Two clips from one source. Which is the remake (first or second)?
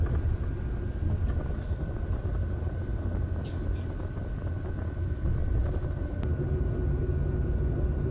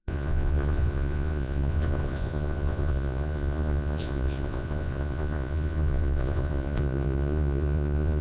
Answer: second